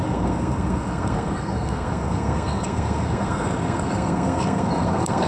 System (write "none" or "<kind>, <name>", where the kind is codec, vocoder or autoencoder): codec, SNAC